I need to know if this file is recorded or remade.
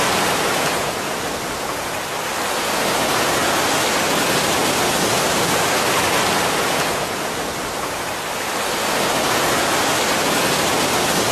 recorded